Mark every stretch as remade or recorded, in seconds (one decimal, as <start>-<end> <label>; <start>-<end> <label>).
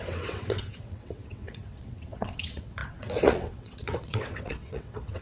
0.0-5.2 remade